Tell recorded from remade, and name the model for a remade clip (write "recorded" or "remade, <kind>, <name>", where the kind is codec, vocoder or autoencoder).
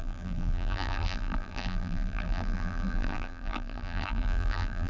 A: remade, vocoder, BigVGAN v2